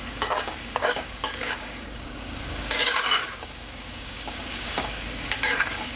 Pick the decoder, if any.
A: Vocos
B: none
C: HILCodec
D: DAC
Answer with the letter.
D